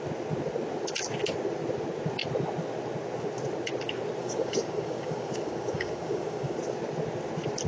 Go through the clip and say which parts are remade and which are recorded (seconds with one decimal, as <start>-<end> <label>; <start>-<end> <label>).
0.0-4.2 recorded; 4.2-6.6 remade; 6.6-7.7 recorded